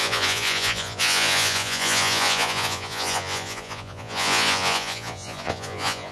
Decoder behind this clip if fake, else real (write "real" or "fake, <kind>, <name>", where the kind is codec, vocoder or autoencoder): fake, vocoder, Vocos